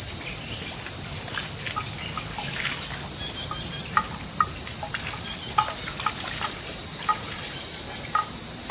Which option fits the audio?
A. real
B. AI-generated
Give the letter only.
A